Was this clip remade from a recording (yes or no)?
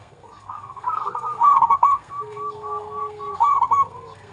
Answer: yes